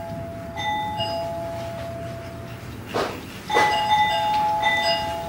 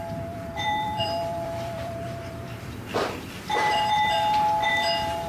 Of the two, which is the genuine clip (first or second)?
first